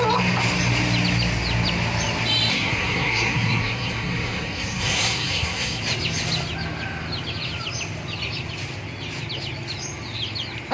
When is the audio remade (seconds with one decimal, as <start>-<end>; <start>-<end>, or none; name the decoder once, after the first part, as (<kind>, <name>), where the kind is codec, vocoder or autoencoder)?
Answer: 2.5-5.8 (codec, SNAC)